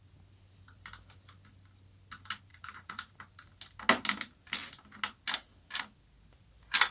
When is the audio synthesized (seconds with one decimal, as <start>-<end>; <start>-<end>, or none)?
2.5-3.1

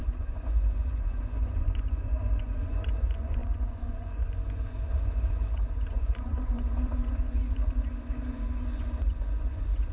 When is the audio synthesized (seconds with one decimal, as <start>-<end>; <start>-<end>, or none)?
0.0-9.9

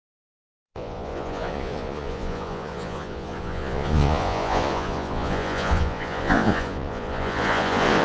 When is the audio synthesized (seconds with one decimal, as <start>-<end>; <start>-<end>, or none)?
0.0-8.0